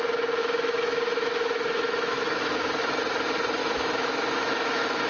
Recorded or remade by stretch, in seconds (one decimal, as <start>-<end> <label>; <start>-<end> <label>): 0.0-0.4 recorded; 0.4-3.0 remade; 3.0-3.6 recorded; 3.6-5.1 remade